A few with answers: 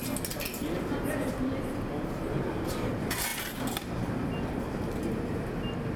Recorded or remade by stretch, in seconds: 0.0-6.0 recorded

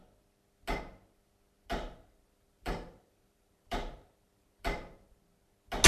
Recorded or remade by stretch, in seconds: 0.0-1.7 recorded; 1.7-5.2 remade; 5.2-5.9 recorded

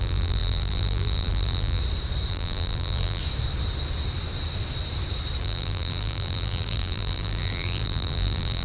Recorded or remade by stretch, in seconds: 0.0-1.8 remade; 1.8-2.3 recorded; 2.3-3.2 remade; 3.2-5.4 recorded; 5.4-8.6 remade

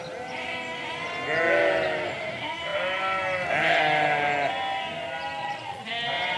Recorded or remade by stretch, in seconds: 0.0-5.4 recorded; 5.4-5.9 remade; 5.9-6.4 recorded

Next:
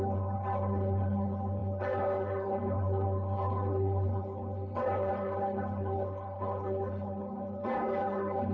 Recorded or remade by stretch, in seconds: 0.0-8.5 remade